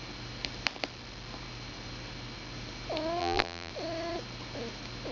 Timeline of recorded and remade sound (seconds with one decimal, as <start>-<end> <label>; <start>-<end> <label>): 0.0-3.2 recorded; 3.2-3.7 remade; 3.7-5.1 recorded